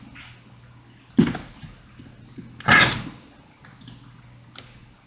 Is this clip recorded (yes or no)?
yes